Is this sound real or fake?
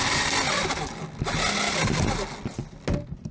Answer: real